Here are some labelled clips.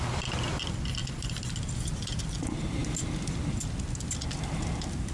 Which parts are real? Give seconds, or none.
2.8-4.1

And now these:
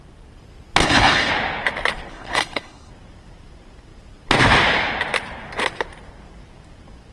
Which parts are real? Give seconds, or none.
0.0-0.8; 1.3-2.1; 2.9-7.1

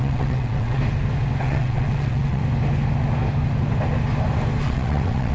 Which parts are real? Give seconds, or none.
0.8-1.4; 2.4-4.6

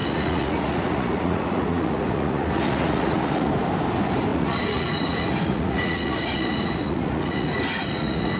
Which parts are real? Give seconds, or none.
3.5-4.3

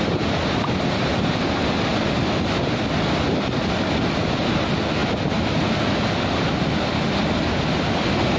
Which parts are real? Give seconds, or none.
0.0-8.4

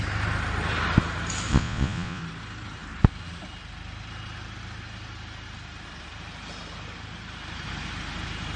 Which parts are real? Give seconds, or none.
0.0-1.5; 2.2-8.6

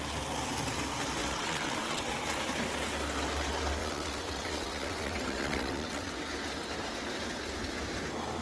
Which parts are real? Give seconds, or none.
0.0-1.2; 2.1-3.8; 6.1-8.4

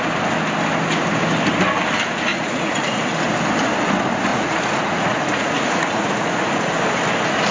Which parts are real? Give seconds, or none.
0.0-2.3; 3.1-4.3; 6.7-7.5